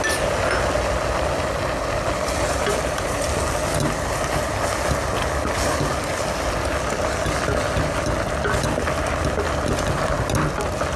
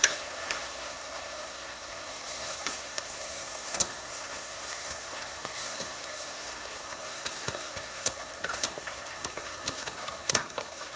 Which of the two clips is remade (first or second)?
second